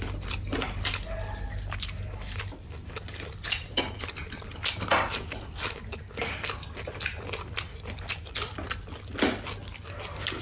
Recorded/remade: recorded